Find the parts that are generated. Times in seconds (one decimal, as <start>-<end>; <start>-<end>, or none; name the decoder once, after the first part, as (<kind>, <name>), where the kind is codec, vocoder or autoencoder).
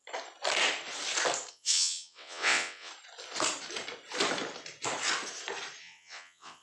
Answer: 1.5-2.9 (vocoder, WaveNeXt); 5.8-6.6